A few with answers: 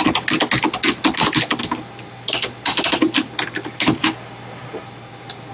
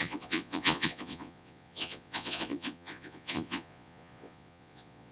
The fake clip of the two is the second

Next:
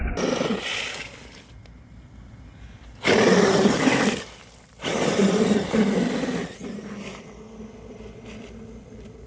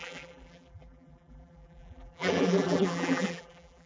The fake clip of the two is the second